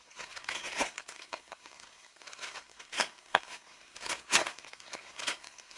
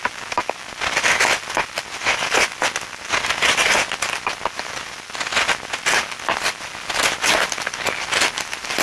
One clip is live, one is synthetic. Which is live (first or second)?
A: second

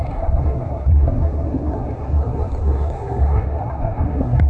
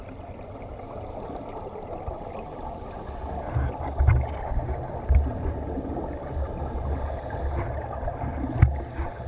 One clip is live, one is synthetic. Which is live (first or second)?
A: second